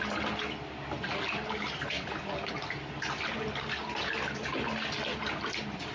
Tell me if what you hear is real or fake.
real